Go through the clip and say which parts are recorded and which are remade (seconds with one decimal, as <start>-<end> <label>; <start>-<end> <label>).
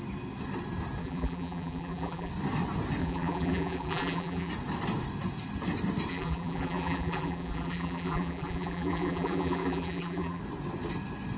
0.0-1.0 recorded; 1.0-2.3 remade; 2.3-3.0 recorded; 3.0-4.5 remade; 4.5-6.1 recorded; 6.1-10.4 remade; 10.4-11.4 recorded